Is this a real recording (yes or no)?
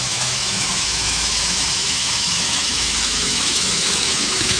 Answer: no